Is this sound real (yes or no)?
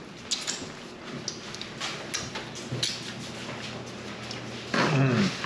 yes